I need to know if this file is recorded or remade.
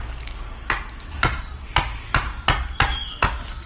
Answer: recorded